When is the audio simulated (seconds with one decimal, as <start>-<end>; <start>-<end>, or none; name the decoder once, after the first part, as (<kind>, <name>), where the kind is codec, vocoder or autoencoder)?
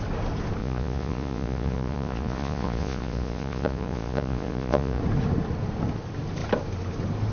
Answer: 0.6-5.0 (vocoder, Vocos)